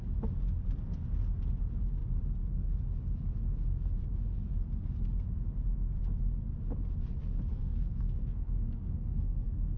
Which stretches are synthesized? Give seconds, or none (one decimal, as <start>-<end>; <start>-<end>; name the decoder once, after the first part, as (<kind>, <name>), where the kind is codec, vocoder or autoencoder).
7.5-9.8 (codec, SNAC)